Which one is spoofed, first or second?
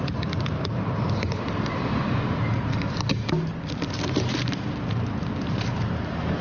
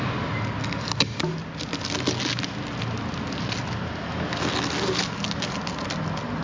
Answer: first